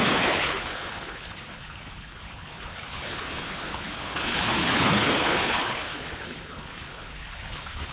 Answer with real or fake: fake